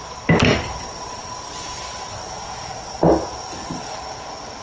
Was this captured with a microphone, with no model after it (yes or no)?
yes